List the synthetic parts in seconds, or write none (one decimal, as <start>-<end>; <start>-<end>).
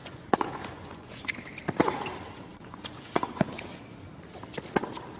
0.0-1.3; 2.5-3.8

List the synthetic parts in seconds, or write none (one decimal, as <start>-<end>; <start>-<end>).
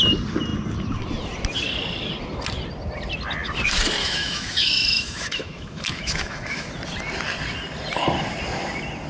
4.0-6.7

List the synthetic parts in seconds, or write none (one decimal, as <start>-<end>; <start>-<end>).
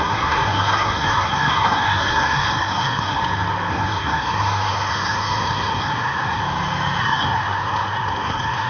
0.0-3.2; 3.7-6.4; 7.0-8.7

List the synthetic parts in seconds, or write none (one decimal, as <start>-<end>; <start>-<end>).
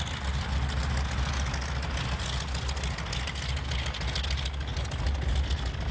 none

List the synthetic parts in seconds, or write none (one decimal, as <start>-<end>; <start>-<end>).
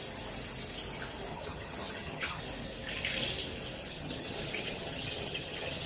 1.3-2.4; 3.8-5.9